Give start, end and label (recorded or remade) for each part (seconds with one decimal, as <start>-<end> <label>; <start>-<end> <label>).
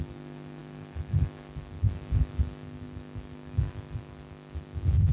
0.0-5.1 recorded